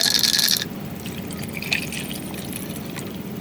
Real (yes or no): yes